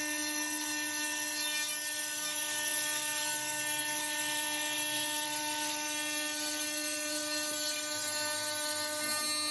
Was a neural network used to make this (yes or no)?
no